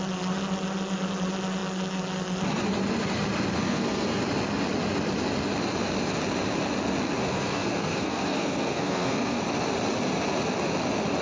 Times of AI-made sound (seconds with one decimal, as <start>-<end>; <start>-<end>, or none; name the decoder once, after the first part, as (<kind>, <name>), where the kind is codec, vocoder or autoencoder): 3.6-4.2 (codec, SNAC); 7.2-9.4